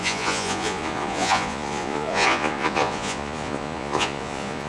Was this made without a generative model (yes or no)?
no